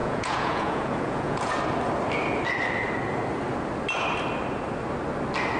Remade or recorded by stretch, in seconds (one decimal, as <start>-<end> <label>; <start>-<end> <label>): 0.0-1.5 remade; 1.5-5.6 recorded